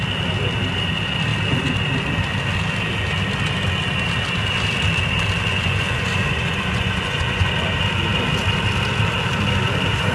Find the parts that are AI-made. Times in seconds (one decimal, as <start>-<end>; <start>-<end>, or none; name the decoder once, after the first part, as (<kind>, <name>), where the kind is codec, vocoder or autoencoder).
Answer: 5.5-7.5 (vocoder, Vocos)